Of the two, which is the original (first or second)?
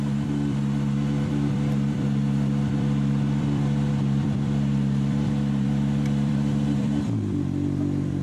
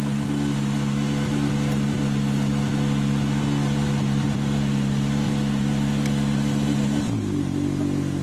second